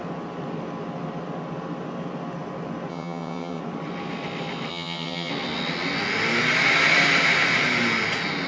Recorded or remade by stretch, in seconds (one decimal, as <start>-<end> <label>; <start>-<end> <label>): 0.0-2.9 recorded; 2.9-3.6 remade; 3.6-4.7 recorded; 4.7-5.3 remade; 5.3-8.5 recorded